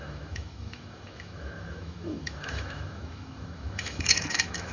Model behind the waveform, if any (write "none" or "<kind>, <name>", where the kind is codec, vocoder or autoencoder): autoencoder, DAC-VAE